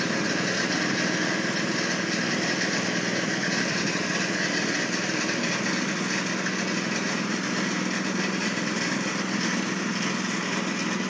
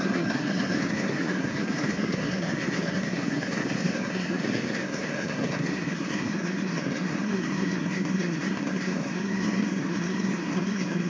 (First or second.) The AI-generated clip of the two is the second